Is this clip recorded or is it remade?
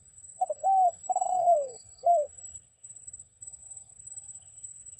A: remade